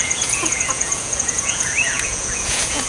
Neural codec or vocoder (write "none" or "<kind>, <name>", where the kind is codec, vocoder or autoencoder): vocoder, Vocos